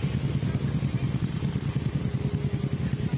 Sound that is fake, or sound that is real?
real